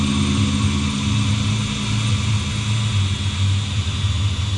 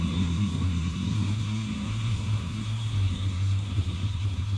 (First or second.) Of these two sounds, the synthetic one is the second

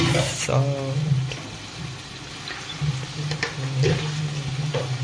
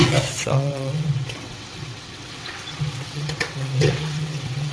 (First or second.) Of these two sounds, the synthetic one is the second